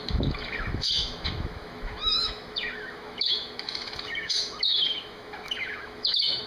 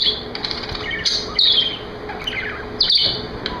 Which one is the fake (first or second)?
first